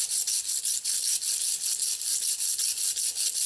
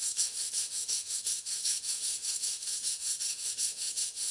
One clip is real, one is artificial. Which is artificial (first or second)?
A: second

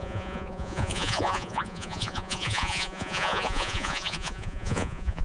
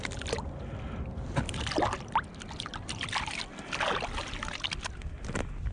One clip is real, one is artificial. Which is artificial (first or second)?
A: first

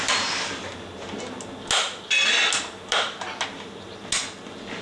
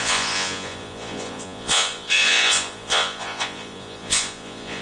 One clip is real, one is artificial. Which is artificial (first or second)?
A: second